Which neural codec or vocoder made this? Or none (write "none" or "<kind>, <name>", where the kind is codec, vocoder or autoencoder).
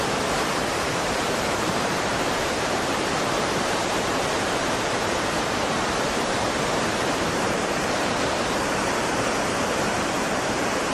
vocoder, BigVGAN v2